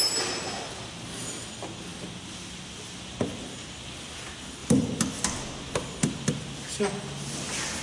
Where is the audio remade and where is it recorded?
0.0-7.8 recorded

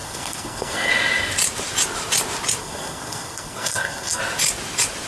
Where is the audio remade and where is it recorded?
0.0-0.9 remade; 0.9-2.6 recorded; 2.6-4.2 remade; 4.2-5.1 recorded

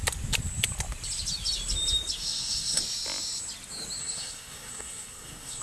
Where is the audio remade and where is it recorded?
0.0-2.2 recorded; 2.2-2.8 remade; 2.8-4.0 recorded; 4.0-5.6 remade

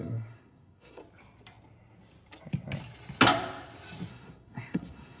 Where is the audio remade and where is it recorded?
0.0-1.0 remade; 1.0-4.1 recorded; 4.1-5.2 remade

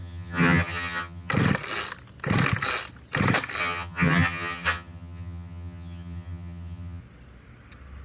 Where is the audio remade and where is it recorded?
0.0-1.3 remade; 1.3-3.6 recorded; 3.6-7.0 remade; 7.0-8.0 recorded

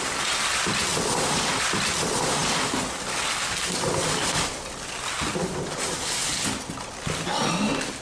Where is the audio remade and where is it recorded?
0.0-0.9 recorded; 0.9-1.5 remade; 1.5-8.0 recorded

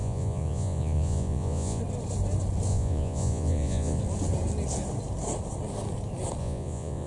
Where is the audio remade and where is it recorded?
0.0-1.8 remade; 1.8-2.7 recorded; 2.7-4.0 remade; 4.0-6.4 recorded; 6.4-7.1 remade